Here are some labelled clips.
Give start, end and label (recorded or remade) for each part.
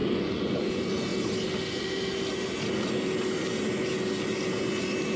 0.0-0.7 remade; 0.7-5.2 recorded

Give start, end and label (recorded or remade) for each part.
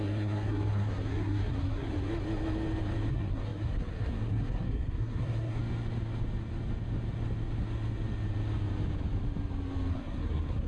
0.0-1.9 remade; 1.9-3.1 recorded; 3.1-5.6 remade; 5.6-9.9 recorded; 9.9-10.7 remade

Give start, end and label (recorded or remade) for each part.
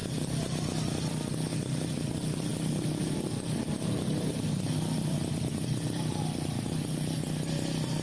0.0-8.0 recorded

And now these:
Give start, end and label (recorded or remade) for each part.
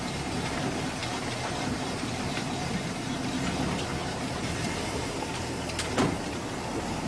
0.0-1.0 recorded; 1.0-2.1 remade; 2.1-4.0 recorded; 4.0-5.1 remade; 5.1-7.1 recorded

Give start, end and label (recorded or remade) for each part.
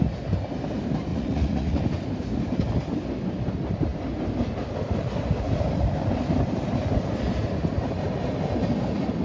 0.0-1.1 recorded; 1.1-1.8 remade; 1.8-9.2 recorded